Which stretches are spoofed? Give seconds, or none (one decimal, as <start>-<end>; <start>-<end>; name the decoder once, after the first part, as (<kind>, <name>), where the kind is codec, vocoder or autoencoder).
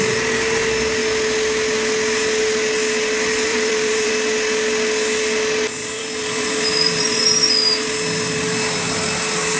3.5-4.1 (vocoder, BigVGAN v2); 5.8-7.2